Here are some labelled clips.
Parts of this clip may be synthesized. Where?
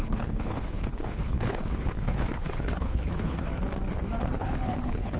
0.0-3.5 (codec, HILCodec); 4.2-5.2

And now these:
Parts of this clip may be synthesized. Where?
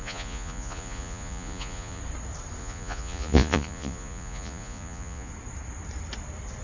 0.0-2.0 (vocoder, Vocos); 2.6-5.3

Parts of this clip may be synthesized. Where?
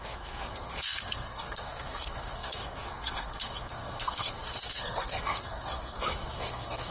0.0-6.9 (codec, SNAC)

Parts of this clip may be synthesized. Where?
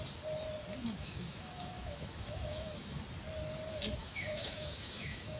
0.8-3.0 (autoencoder, DAC-VAE); 4.0-5.4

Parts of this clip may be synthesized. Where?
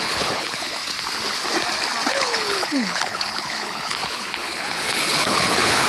0.0-0.8 (codec, HILCodec); 2.1-5.9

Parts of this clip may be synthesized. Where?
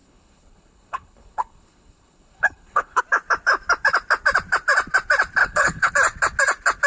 0.0-3.0 (codec, HILCodec); 5.4-5.9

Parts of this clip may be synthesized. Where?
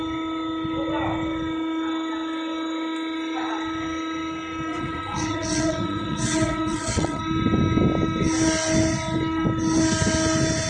4.7-7.2 (vocoder, WaveNeXt)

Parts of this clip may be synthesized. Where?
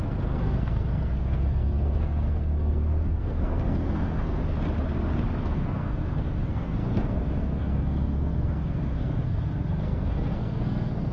0.0-4.4 (codec, SNAC); 5.4-11.1